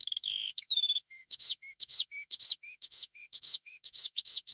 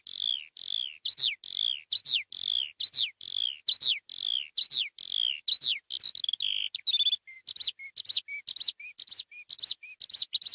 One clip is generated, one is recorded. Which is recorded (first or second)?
second